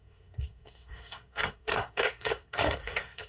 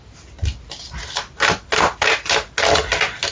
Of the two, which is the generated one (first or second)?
first